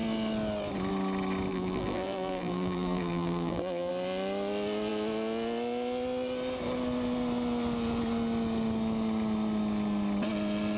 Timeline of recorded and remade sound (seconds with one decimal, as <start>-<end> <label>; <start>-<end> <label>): 0.0-1.5 recorded; 1.5-3.9 remade; 3.9-10.8 recorded

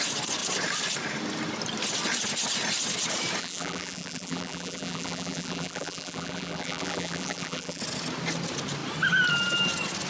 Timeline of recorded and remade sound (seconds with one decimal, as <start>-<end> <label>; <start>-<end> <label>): 0.0-3.4 recorded; 3.4-7.8 remade; 7.8-10.1 recorded

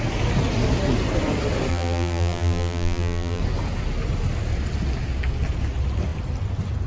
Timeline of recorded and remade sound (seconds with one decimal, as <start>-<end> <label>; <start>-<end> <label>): 0.0-1.7 recorded; 1.7-3.4 remade; 3.4-6.9 recorded

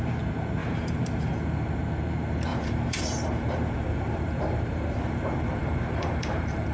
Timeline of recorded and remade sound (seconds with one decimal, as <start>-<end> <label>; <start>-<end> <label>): 0.0-0.6 recorded; 0.6-1.3 remade; 1.3-2.5 recorded; 2.5-6.7 remade

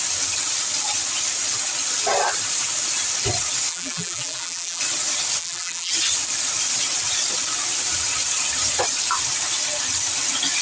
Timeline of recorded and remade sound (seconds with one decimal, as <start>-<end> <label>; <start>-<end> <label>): 0.0-3.7 recorded; 3.7-4.8 remade; 4.8-5.4 recorded; 5.4-5.9 remade; 5.9-10.6 recorded

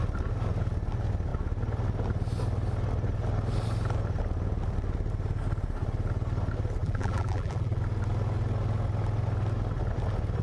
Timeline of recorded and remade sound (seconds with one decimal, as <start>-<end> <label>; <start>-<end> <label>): 0.0-6.8 recorded; 6.8-7.8 remade; 7.8-10.4 recorded

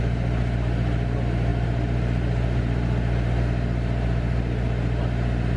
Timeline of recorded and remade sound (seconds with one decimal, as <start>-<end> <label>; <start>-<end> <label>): 0.0-5.6 recorded